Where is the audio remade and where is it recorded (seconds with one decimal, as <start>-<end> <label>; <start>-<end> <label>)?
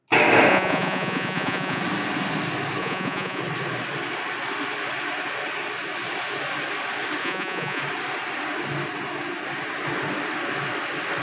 0.0-0.5 recorded; 0.5-1.8 remade; 1.8-2.8 recorded; 2.8-3.4 remade; 3.4-7.2 recorded; 7.2-7.8 remade; 7.8-11.2 recorded